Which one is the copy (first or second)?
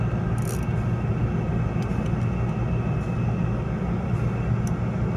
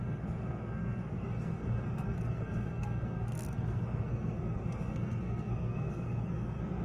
second